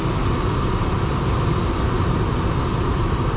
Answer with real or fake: real